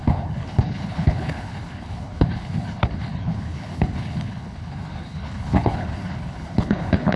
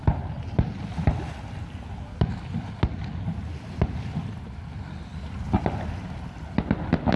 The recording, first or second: second